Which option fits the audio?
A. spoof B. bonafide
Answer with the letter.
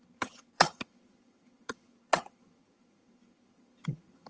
A